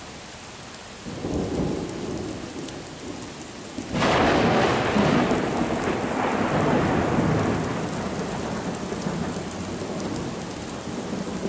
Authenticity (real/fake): real